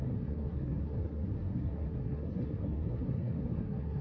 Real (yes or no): no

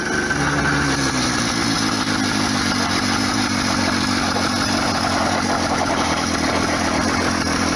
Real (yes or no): yes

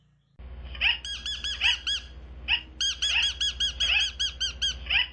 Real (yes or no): yes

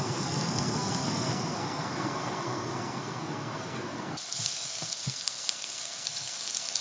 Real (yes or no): no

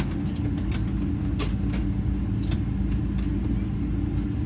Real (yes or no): yes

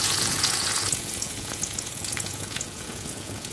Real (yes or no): no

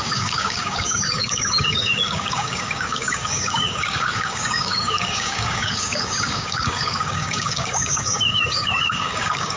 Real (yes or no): no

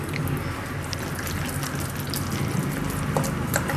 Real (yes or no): yes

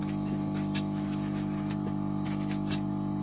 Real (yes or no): yes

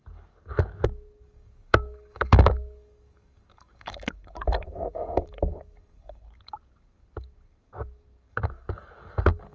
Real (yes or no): no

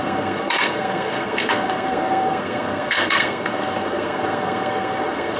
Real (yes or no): no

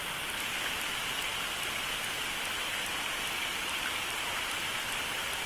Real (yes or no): yes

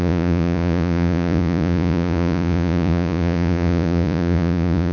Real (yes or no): no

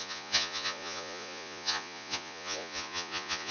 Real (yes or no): no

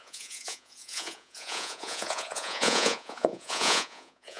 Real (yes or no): no